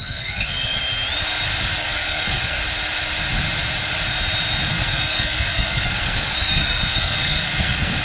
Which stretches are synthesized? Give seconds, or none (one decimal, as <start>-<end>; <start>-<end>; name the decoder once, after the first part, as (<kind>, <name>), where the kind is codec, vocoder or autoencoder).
0.0-0.8 (codec, SNAC); 1.8-2.6; 4.7-8.0

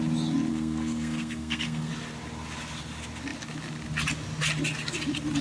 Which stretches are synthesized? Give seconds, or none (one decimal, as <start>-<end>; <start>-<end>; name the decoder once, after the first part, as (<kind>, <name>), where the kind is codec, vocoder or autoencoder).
0.5-1.9 (codec, SNAC)

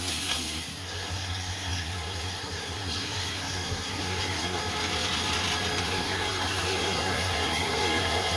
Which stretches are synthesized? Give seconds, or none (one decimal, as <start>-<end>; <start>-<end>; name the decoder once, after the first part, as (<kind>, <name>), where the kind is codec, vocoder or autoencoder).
0.0-4.6 (codec, SNAC); 5.8-8.4

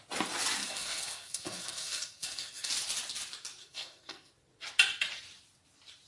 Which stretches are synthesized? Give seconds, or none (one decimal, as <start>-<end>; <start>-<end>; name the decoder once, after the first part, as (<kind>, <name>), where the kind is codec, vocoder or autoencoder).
0.6-2.7 (codec, SNAC); 3.6-4.3

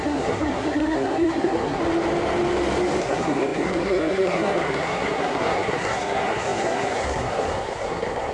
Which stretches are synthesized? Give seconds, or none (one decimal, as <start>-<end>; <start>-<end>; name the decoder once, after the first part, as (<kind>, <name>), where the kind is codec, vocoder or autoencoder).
0.0-1.8 (codec, SNAC); 3.0-8.3

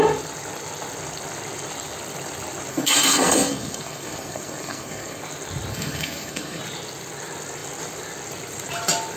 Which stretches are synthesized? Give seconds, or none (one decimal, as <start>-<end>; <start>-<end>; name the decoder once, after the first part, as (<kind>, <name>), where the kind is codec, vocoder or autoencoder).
2.7-5.2 (codec, SNAC); 5.7-6.6

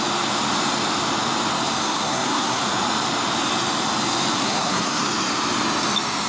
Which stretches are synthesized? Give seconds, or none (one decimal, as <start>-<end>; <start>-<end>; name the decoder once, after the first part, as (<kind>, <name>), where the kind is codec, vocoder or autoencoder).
1.8-2.6 (codec, SNAC); 4.3-5.0